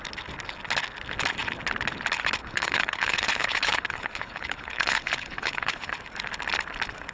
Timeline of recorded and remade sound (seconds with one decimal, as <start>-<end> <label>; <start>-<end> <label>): 0.0-2.4 recorded; 2.4-5.9 remade; 5.9-7.1 recorded